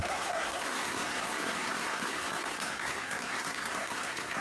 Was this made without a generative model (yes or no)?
no